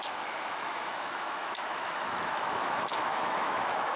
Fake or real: fake